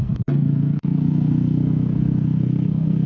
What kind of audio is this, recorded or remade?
remade